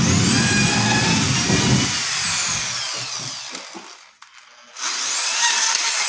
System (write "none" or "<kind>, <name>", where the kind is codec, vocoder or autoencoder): none